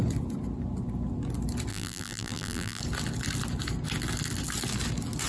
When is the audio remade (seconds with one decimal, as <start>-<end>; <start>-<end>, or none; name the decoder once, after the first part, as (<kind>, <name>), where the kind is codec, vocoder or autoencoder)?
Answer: 1.7-2.8 (vocoder, BigVGAN v2)